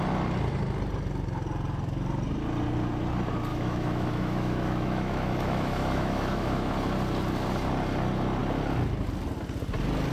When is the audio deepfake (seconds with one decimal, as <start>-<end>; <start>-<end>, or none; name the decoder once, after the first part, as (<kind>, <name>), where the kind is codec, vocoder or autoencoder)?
3.5-6.7 (autoencoder, DAC-VAE)